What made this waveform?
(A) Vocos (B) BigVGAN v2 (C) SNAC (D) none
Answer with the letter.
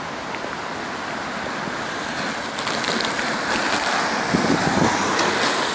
D